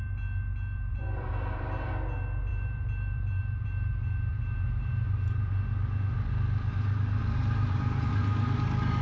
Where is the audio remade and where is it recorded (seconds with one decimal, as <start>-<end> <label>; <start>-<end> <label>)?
0.0-0.9 recorded; 0.9-1.9 remade; 1.9-2.5 recorded; 2.5-5.5 remade; 5.5-7.2 recorded; 7.2-8.1 remade; 8.1-9.0 recorded